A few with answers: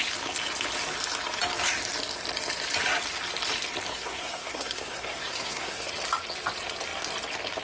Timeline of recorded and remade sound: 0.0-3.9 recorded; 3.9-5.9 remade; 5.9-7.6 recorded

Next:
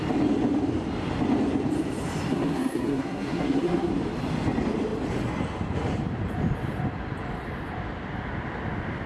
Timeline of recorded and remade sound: 0.0-2.3 recorded; 2.3-3.9 remade; 3.9-9.1 recorded